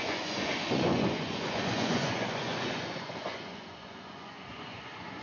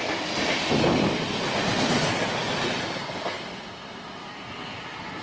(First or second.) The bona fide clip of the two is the second